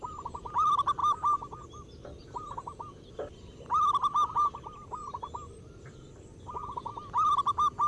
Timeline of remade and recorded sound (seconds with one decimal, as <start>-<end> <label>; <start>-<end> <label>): 0.0-7.9 recorded